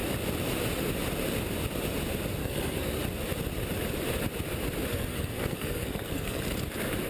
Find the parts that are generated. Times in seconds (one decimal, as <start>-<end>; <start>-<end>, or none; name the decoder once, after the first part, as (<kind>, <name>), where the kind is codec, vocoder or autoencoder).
2.4-3.0 (codec, SNAC); 4.9-6.4

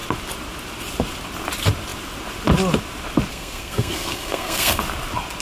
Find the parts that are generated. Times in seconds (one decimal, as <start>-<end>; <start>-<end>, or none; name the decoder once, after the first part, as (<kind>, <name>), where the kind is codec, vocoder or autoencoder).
3.3-4.8 (codec, SNAC)

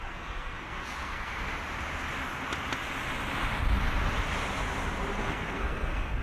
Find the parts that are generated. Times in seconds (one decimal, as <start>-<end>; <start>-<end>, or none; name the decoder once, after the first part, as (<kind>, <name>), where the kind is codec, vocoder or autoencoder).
0.0-1.5 (codec, SNAC); 5.2-6.2

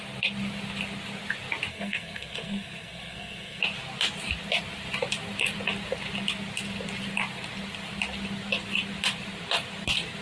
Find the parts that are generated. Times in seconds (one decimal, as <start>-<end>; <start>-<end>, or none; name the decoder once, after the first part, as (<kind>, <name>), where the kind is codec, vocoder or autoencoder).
1.7-3.6 (codec, SNAC)

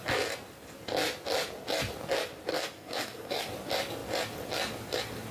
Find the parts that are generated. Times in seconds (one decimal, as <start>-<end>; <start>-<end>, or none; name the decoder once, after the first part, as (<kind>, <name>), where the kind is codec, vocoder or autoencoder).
2.5-3.4 (codec, SNAC)